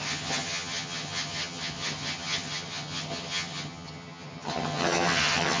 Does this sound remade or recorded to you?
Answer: remade